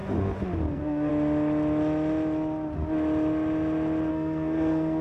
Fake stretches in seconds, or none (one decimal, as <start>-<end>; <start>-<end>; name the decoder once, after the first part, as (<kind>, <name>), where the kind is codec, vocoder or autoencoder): 0.7-1.1 (codec, SNAC); 4.1-5.0